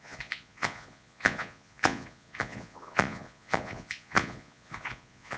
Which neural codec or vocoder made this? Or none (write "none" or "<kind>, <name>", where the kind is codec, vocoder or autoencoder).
vocoder, Vocos